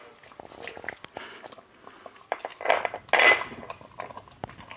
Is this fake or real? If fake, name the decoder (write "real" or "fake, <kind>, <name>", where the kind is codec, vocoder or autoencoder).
real